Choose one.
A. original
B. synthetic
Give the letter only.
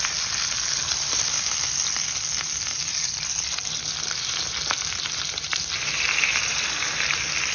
A